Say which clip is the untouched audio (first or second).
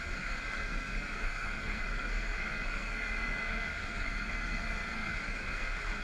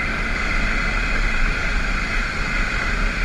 second